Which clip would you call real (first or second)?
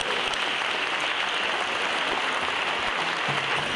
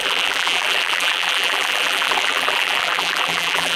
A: first